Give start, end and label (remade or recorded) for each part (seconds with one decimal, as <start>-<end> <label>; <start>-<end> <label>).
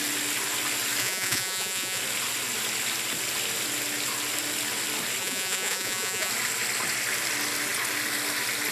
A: 0.0-1.0 recorded; 1.0-2.0 remade; 2.0-5.2 recorded; 5.2-6.3 remade; 6.3-8.7 recorded